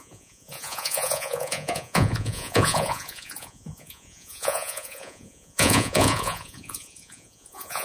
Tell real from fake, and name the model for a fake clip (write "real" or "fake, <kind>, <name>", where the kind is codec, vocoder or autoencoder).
fake, vocoder, Vocos